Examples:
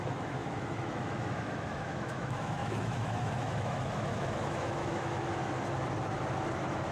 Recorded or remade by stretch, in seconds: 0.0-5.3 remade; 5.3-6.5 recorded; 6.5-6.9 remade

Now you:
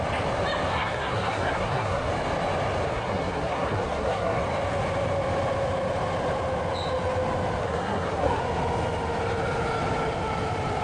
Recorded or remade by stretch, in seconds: 0.0-0.7 recorded; 0.7-2.1 remade; 2.1-2.9 recorded; 2.9-4.4 remade; 4.4-7.6 recorded; 7.6-8.4 remade; 8.4-10.8 recorded